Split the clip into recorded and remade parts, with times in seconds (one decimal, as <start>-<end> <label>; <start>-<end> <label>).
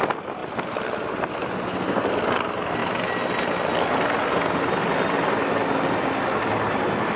0.0-7.2 recorded